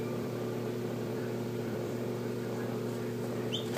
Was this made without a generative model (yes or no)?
no